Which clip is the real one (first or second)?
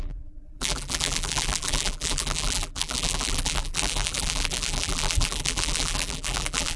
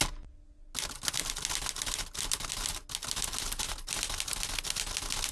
second